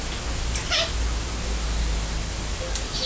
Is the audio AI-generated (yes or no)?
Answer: no